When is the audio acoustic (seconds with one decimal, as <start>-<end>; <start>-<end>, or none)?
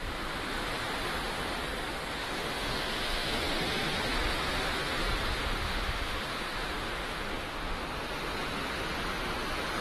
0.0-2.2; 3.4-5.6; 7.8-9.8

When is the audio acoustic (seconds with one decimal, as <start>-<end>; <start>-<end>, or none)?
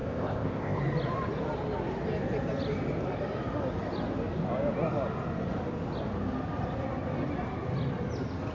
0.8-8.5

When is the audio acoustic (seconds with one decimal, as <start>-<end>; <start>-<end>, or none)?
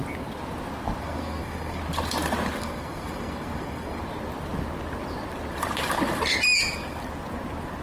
0.0-1.0; 1.8-2.6; 4.0-7.8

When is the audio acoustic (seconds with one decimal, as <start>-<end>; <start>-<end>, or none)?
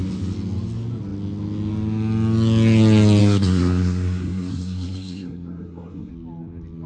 0.0-3.2; 6.1-6.9